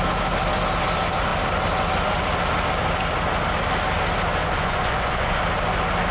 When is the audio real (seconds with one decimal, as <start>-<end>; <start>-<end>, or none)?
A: 0.0-4.4; 5.4-6.1